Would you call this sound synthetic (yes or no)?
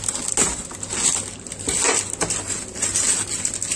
no